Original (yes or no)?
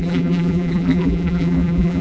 no